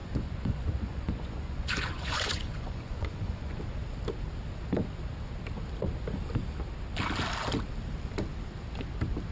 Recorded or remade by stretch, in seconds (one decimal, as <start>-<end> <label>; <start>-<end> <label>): 0.0-3.6 remade; 3.6-9.3 recorded